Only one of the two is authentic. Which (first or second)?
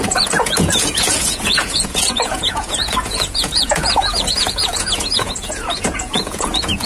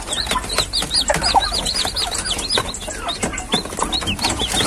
second